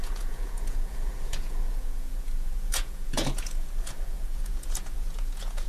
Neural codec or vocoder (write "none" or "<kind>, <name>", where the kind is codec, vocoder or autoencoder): vocoder, Vocos